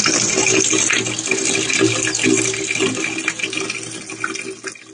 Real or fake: real